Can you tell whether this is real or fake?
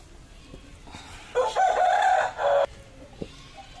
real